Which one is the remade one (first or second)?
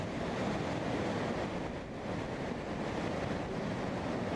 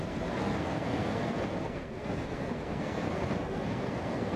second